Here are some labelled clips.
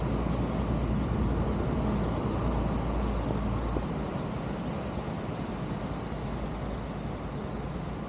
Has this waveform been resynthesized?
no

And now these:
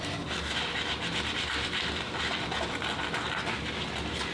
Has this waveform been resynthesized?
no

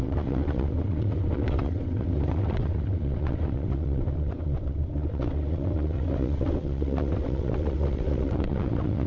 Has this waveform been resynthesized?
yes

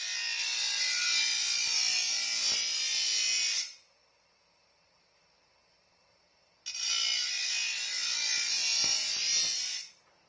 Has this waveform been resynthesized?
no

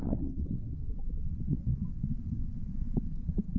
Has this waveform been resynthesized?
yes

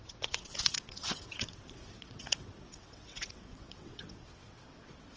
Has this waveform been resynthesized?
yes